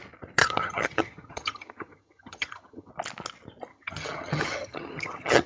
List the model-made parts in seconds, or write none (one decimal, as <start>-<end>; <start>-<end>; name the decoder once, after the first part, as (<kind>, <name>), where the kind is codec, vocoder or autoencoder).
0.4-2.9 (vocoder, HiFi-GAN); 3.7-5.5